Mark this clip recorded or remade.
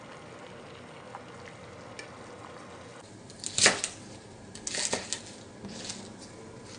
recorded